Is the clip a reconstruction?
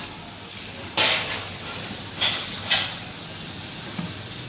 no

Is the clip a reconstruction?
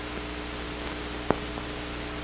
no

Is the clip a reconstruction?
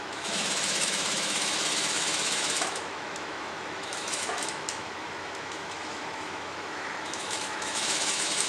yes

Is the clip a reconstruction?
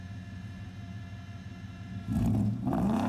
no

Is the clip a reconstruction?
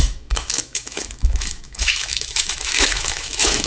yes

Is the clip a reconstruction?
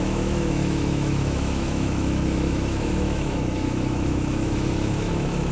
yes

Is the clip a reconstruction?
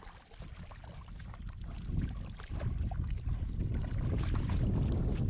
no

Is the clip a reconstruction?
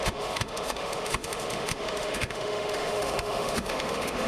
yes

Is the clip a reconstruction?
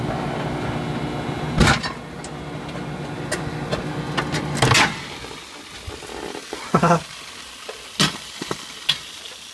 no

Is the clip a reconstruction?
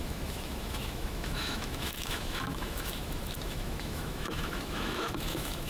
yes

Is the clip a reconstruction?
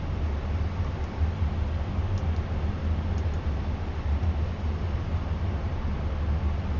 no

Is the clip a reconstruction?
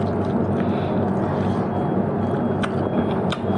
no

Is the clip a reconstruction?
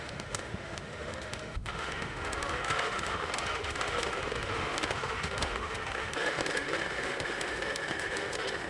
yes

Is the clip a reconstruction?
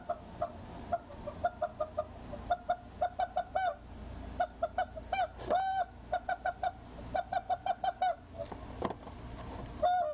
no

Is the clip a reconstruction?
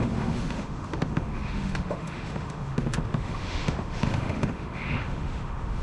yes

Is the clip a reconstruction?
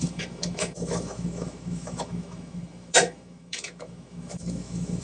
yes